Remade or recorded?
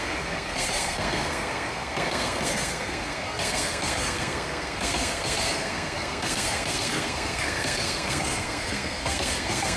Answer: remade